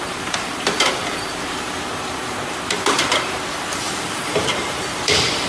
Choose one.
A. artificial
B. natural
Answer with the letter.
A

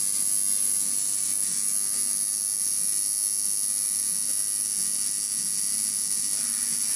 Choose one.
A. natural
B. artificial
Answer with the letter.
A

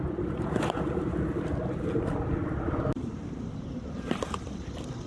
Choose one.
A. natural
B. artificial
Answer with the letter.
A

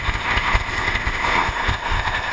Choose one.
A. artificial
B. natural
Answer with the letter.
A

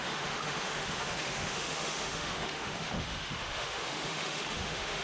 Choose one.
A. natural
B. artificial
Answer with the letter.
B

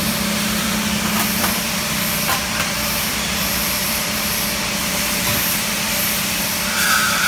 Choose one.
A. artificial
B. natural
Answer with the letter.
A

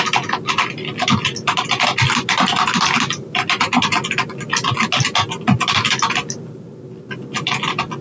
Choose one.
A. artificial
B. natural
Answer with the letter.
B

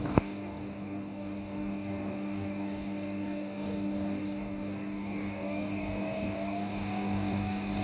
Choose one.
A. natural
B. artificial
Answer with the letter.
B